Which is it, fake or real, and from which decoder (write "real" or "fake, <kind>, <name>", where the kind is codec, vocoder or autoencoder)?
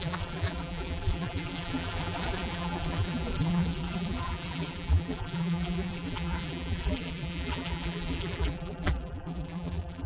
fake, vocoder, BigVGAN v2